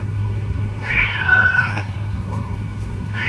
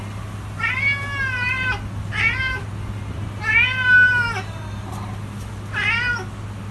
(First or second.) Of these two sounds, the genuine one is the second